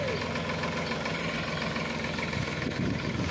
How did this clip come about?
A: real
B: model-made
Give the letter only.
A